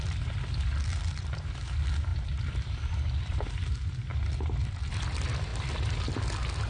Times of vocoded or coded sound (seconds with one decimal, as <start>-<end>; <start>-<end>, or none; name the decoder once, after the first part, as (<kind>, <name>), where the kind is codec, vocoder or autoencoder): 2.1-3.6 (vocoder, BigVGAN v2)